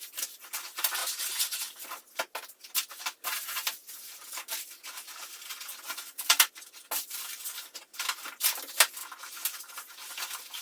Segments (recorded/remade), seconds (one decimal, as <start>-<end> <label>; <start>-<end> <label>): 0.0-1.0 recorded; 1.0-2.0 remade; 2.0-9.0 recorded; 9.0-9.6 remade; 9.6-10.6 recorded